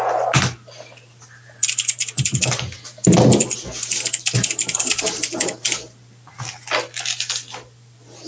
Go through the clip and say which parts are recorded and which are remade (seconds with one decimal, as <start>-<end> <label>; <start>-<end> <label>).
0.0-8.3 recorded